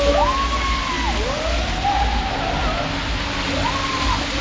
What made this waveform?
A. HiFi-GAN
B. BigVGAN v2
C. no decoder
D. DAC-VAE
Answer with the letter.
C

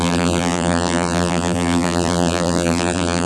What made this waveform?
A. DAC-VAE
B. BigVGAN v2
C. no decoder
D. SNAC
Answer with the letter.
B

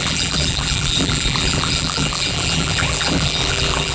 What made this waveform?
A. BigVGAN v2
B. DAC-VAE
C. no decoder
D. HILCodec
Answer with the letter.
A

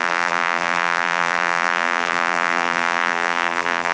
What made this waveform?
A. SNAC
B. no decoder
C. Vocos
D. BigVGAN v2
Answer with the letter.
D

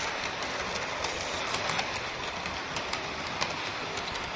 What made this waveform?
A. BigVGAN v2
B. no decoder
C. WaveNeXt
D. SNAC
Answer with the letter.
A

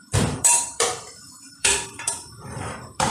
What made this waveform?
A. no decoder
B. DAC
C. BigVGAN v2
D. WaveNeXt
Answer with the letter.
C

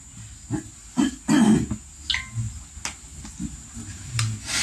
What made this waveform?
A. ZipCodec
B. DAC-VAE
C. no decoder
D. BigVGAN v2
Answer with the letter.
C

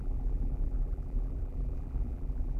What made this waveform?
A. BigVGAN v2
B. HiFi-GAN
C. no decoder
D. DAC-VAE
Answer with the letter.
A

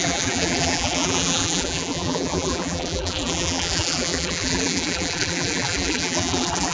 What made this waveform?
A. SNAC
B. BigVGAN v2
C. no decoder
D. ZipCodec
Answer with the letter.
B